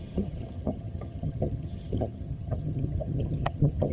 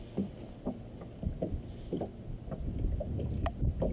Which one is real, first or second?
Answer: second